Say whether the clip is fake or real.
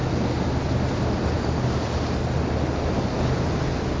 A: real